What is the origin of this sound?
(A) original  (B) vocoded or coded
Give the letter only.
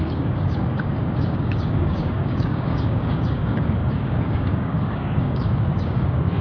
B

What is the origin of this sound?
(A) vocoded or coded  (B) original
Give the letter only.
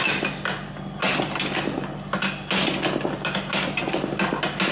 B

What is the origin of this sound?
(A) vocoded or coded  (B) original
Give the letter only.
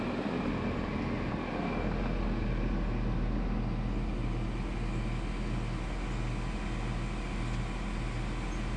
B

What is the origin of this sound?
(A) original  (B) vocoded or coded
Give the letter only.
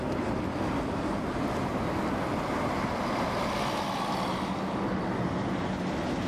A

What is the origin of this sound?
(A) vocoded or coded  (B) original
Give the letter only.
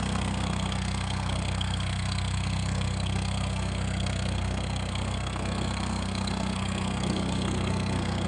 A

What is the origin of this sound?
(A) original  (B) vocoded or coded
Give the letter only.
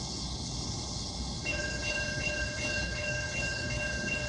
B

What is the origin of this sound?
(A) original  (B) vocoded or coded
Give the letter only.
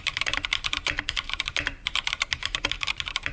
B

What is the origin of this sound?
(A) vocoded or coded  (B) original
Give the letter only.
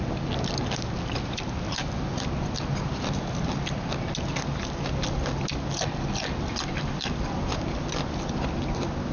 B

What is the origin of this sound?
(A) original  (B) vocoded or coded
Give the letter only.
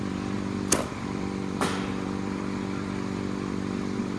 B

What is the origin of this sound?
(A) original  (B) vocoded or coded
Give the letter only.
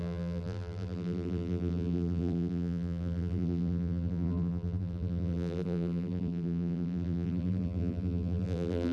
B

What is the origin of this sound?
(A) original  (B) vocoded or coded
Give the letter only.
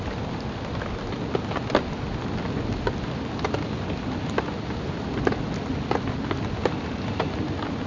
A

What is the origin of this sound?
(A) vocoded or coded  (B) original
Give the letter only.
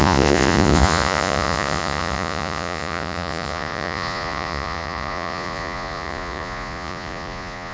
A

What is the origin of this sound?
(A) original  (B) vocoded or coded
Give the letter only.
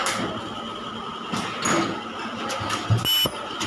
A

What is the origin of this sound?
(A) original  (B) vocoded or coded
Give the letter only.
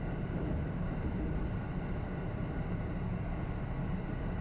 A